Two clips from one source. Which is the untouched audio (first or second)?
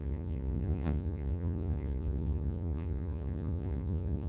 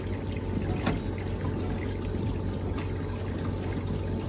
second